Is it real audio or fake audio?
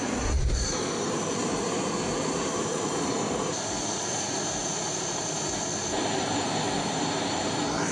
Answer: fake